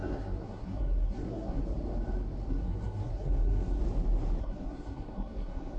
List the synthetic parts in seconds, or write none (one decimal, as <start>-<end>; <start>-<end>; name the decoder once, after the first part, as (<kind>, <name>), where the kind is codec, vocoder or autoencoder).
0.0-1.6 (codec, SNAC); 2.5-3.8; 4.4-5.8